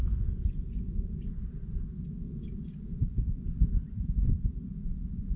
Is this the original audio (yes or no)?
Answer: yes